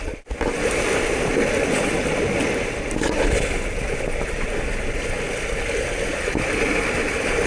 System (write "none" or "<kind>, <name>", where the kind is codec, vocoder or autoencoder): none